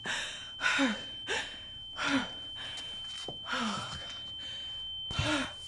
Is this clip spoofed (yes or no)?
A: no